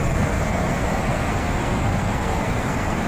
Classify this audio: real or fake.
fake